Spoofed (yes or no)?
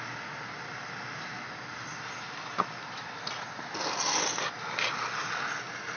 no